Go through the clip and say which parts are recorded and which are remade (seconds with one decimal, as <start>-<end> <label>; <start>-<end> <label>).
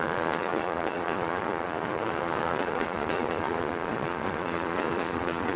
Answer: 0.0-5.6 remade